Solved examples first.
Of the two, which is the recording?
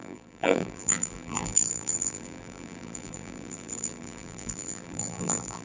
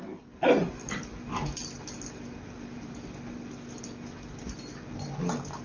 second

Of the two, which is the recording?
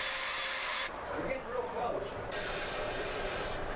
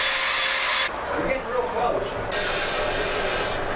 second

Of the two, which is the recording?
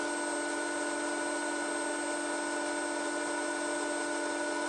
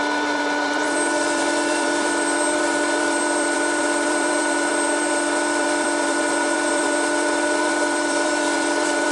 first